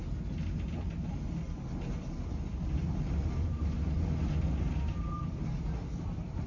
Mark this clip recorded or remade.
recorded